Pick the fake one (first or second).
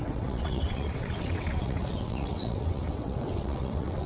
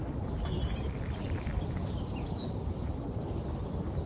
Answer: first